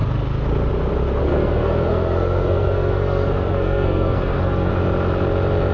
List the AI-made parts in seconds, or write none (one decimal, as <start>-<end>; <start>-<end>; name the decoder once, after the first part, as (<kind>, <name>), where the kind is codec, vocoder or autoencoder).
1.3-4.7 (codec, SNAC)